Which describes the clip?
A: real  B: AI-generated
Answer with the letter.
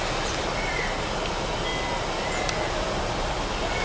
A